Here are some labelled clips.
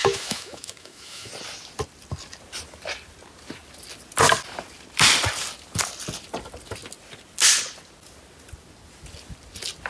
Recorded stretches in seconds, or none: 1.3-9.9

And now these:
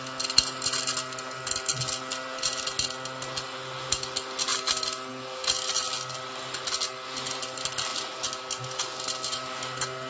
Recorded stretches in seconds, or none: 0.0-10.1

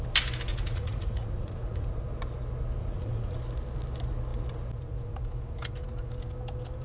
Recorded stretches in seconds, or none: 0.0-0.5; 2.0-2.8; 3.4-6.8

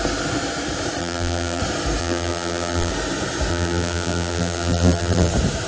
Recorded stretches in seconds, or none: 0.0-1.0; 1.6-2.0; 2.9-3.5; 5.3-5.7

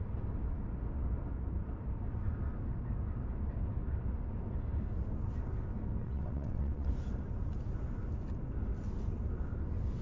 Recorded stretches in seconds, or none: 0.0-6.0; 6.9-10.0